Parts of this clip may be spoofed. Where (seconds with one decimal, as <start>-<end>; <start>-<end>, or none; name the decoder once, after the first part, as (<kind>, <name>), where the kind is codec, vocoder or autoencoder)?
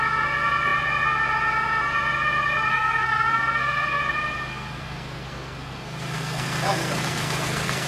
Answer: 2.7-4.0 (codec, SNAC); 4.5-7.9